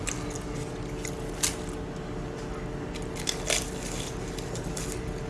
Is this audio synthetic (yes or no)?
no